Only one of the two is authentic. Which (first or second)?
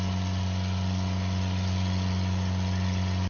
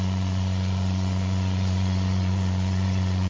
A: first